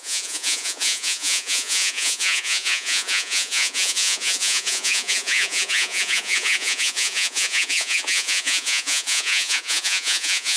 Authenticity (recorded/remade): remade